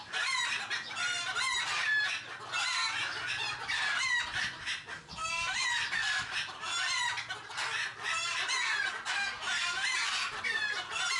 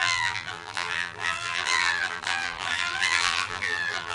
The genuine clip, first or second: first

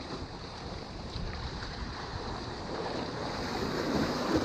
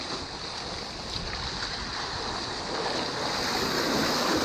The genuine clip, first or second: second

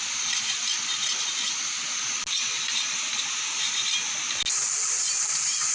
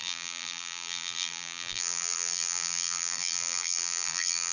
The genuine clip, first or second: first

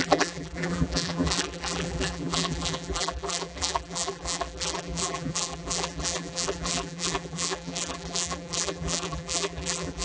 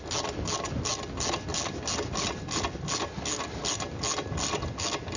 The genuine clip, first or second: second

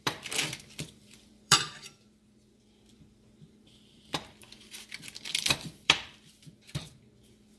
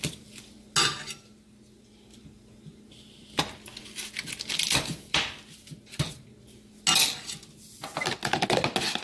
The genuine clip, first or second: second